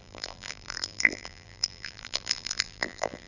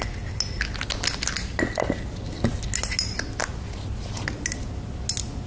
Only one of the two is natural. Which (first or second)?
second